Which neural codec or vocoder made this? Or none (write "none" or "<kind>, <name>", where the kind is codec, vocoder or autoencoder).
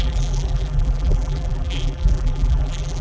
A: vocoder, BigVGAN v2